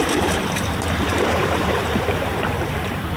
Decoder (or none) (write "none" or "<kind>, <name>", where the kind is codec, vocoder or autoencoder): vocoder, BigVGAN v2